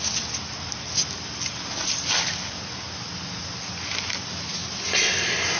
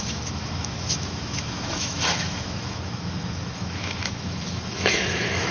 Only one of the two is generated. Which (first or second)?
second